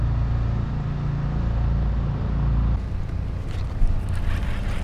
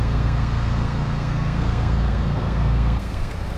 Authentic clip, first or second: first